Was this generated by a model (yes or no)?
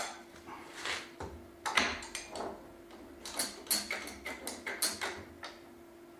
no